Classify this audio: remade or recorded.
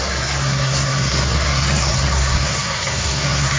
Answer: remade